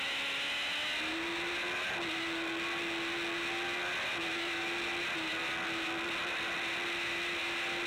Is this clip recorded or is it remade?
recorded